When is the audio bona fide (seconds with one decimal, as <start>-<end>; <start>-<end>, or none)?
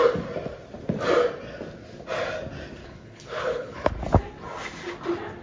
0.0-2.8; 3.9-5.4